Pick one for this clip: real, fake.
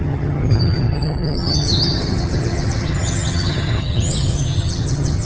fake